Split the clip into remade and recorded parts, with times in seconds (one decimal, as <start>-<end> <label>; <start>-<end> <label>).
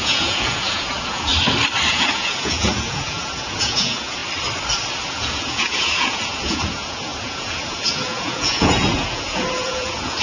0.0-1.3 remade; 1.3-1.9 recorded; 1.9-4.2 remade; 4.2-5.1 recorded; 5.1-10.2 remade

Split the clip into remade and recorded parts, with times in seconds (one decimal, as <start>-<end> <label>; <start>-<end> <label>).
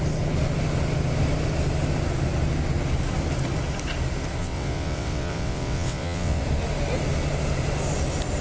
0.0-4.4 recorded; 4.4-6.4 remade; 6.4-8.4 recorded